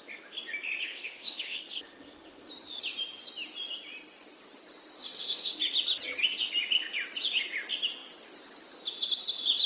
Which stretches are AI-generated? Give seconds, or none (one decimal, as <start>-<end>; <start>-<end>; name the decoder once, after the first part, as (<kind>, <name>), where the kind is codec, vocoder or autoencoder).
0.8-1.6 (autoencoder, DAC-VAE); 5.0-5.5